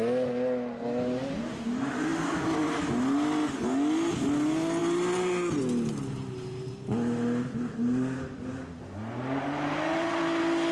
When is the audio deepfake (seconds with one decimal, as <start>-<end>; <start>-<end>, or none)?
none